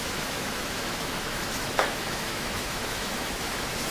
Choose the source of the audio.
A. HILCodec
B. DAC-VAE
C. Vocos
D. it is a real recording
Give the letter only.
B